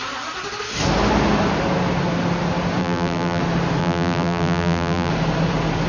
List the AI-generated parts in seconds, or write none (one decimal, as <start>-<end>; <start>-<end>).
2.8-3.4; 3.8-5.1

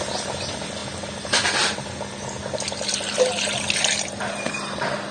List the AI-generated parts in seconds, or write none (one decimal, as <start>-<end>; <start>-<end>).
none

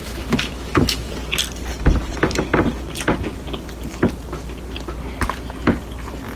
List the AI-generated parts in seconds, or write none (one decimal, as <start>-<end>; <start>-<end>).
0.0-1.1